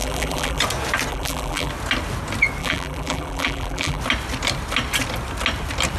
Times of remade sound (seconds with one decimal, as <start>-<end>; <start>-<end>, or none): 0.0-0.6; 1.1-1.7; 2.6-4.0